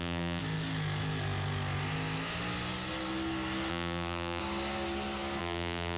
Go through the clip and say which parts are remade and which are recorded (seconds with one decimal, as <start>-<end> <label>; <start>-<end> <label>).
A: 0.0-0.4 remade; 0.4-3.7 recorded; 3.7-4.4 remade; 4.4-5.4 recorded; 5.4-6.0 remade